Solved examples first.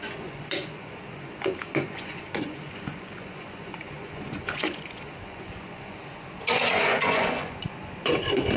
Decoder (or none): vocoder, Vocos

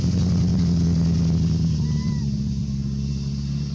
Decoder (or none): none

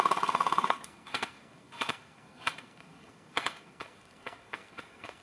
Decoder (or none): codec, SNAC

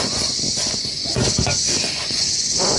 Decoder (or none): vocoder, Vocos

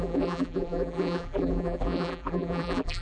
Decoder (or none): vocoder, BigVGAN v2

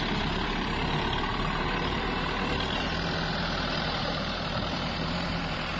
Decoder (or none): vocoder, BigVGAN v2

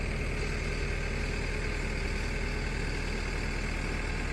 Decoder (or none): none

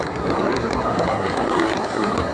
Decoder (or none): codec, SNAC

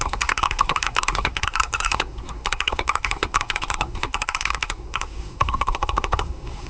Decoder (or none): codec, SNAC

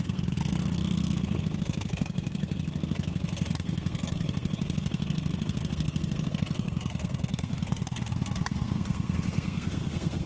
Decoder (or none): codec, SNAC